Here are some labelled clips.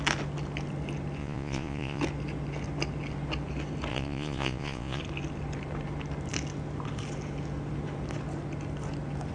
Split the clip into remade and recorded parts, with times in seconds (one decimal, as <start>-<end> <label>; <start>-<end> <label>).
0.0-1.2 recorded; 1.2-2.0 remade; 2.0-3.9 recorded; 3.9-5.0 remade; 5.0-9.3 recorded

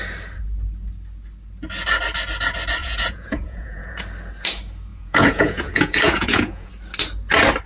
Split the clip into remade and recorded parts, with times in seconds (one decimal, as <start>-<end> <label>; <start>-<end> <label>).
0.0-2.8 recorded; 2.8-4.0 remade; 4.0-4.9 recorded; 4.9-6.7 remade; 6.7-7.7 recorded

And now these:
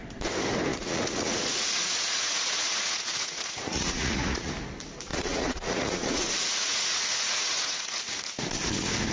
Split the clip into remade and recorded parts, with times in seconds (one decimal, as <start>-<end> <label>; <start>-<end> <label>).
0.0-0.7 recorded; 0.7-4.5 remade; 4.5-5.1 recorded; 5.1-8.3 remade; 8.3-9.1 recorded